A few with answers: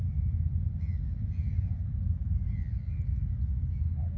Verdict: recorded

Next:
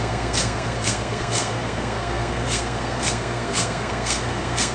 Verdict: remade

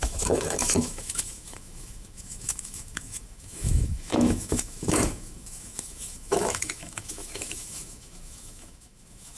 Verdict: remade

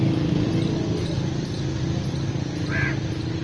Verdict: recorded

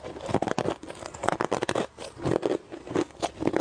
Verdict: recorded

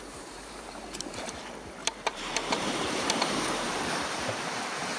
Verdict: remade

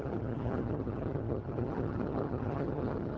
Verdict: remade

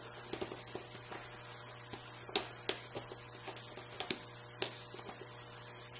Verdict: recorded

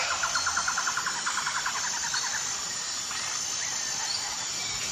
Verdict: recorded